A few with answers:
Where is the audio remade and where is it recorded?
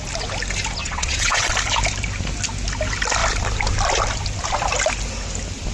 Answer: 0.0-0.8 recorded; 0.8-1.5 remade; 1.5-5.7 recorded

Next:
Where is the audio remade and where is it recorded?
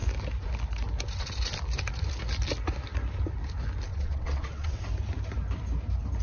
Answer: 0.0-3.9 recorded; 3.9-4.8 remade; 4.8-6.2 recorded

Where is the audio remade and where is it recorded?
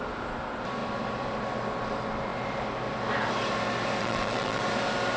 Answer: 0.0-4.0 recorded; 4.0-4.6 remade; 4.6-5.2 recorded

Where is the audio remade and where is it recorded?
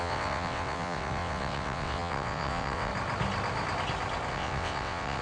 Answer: 0.0-2.9 remade; 2.9-4.3 recorded; 4.3-5.2 remade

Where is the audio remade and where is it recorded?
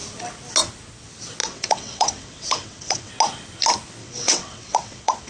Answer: 0.0-1.4 recorded; 1.4-3.1 remade; 3.1-4.0 recorded; 4.0-5.3 remade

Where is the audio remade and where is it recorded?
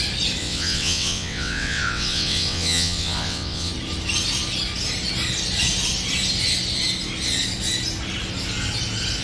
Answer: 0.0-0.4 recorded; 0.4-3.7 remade; 3.7-9.2 recorded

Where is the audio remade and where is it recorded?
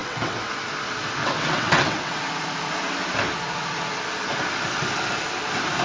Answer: 0.0-0.5 remade; 0.5-1.2 recorded; 1.2-2.2 remade; 2.2-5.8 recorded